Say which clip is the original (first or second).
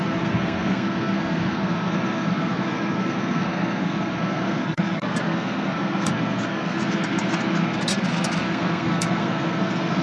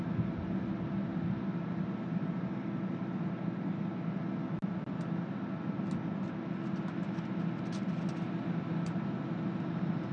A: second